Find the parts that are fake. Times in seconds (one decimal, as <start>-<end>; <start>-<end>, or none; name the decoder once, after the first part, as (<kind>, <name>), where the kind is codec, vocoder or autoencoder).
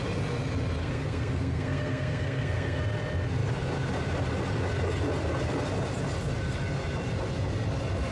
0.8-2.8 (codec, SNAC)